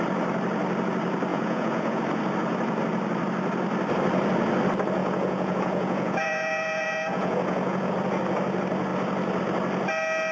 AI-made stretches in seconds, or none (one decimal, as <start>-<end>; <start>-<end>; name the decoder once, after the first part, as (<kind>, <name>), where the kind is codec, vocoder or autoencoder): 1.3-2.0 (vocoder, Vocos); 5.0-7.9